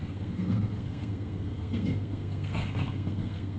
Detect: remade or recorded remade